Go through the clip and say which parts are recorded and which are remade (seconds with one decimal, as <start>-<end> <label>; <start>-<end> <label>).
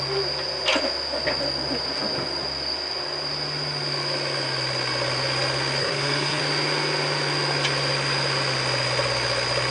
0.0-5.8 recorded; 5.8-6.4 remade; 6.4-9.7 recorded